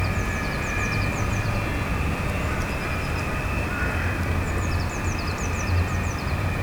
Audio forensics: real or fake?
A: fake